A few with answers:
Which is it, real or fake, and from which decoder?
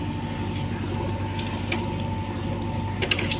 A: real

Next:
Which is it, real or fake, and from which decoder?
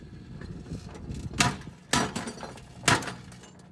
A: real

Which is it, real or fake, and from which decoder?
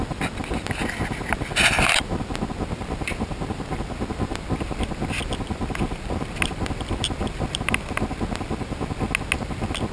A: real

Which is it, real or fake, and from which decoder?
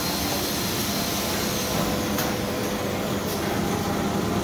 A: real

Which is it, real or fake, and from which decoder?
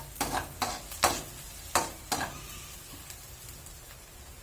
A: real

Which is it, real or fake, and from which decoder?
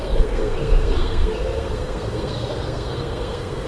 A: fake, codec, SNAC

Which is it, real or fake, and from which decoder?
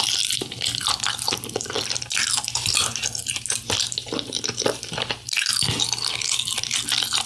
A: real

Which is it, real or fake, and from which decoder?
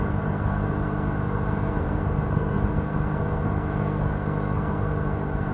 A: fake, codec, SNAC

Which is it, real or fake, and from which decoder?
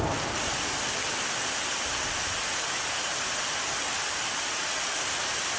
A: real